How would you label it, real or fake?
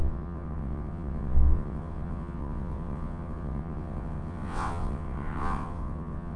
fake